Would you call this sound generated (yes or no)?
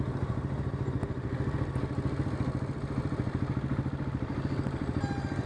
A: no